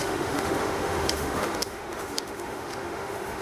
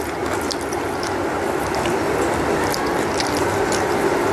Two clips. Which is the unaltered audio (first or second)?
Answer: second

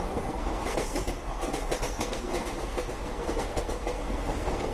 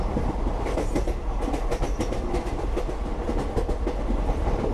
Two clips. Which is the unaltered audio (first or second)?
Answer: second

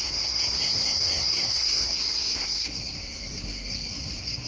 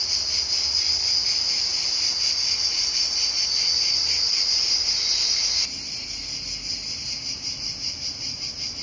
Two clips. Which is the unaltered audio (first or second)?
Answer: second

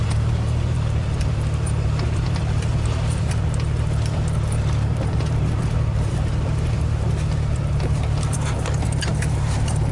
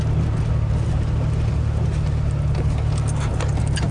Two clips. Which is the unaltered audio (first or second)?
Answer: second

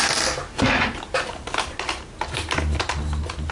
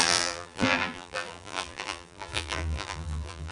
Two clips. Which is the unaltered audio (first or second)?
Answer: first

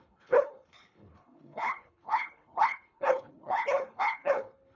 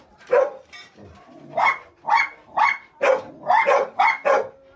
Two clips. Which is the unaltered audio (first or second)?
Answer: second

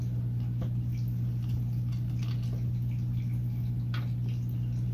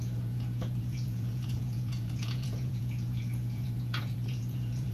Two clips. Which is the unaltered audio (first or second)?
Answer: first